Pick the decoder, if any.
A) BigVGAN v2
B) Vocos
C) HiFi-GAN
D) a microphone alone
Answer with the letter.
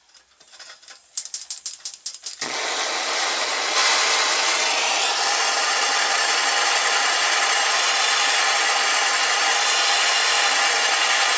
D